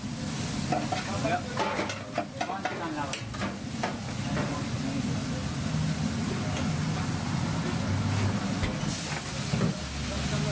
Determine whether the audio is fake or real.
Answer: real